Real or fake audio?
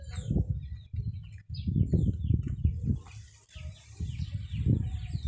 real